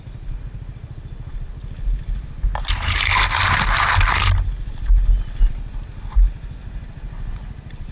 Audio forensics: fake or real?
real